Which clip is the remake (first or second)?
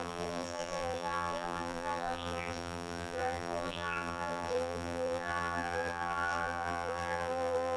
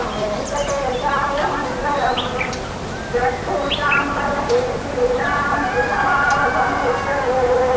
first